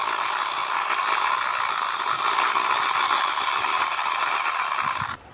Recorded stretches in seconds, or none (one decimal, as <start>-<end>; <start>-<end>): 0.0-5.3

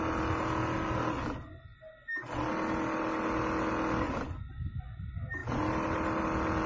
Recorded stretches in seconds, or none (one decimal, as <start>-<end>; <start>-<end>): 0.0-6.7

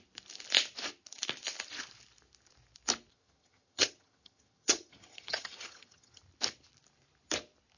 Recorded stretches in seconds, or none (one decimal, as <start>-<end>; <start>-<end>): 0.0-3.1; 6.2-7.8

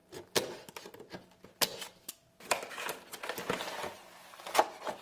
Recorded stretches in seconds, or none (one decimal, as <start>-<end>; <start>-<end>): 0.0-5.0